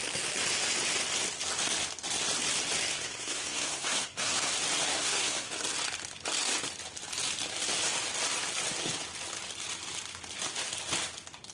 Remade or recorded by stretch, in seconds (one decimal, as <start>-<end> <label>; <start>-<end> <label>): 0.0-2.9 recorded; 2.9-4.5 remade; 4.5-4.9 recorded; 4.9-5.5 remade; 5.5-11.5 recorded